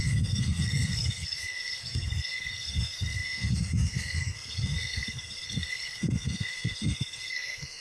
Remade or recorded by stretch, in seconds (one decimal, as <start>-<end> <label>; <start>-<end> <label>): 0.0-7.8 remade